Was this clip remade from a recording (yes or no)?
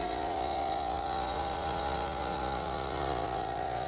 yes